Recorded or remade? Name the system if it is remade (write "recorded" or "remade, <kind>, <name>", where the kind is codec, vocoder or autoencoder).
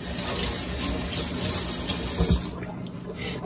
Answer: recorded